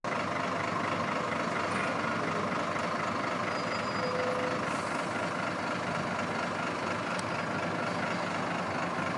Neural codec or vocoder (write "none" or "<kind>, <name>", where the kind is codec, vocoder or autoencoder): none